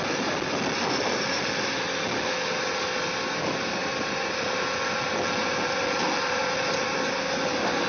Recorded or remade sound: recorded